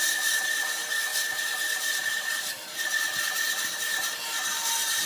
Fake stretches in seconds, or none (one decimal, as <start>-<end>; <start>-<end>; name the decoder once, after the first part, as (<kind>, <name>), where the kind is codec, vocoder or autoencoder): none